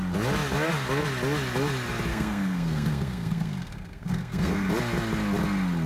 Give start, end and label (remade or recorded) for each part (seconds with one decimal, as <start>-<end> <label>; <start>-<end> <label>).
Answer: 0.0-2.1 recorded; 2.1-4.7 remade; 4.7-5.9 recorded